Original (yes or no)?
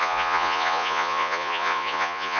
no